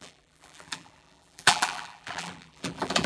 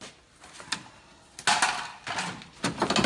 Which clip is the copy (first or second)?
first